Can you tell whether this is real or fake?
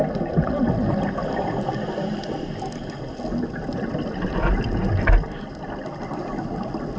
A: real